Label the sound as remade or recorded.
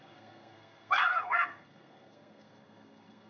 remade